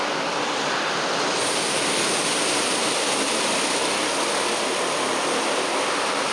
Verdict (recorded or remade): recorded